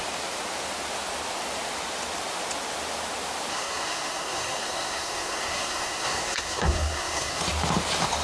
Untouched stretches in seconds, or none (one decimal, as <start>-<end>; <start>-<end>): 0.0-3.5; 7.4-8.2